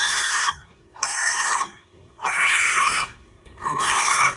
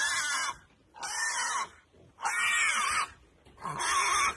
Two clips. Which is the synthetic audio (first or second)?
first